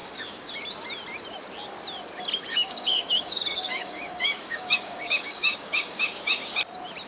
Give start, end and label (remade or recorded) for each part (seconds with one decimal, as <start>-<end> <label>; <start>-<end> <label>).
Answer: 0.0-0.5 remade; 0.5-2.5 recorded; 2.5-6.6 remade; 6.6-7.1 recorded